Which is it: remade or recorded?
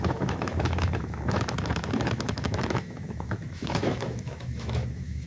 remade